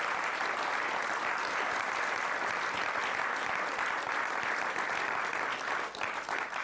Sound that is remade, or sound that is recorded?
recorded